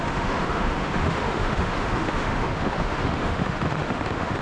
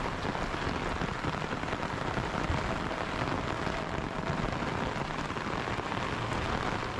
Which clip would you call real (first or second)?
second